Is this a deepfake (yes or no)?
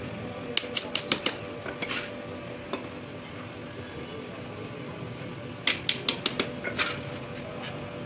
no